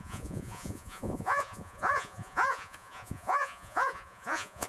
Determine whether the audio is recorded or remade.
remade